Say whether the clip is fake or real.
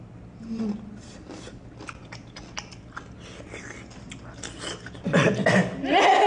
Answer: real